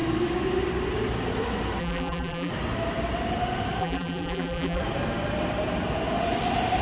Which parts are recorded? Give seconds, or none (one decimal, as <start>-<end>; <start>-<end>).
0.0-1.8; 2.5-3.8; 4.8-6.8